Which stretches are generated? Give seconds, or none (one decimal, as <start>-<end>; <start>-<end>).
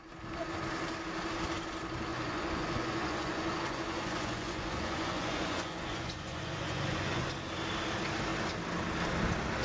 2.1-7.3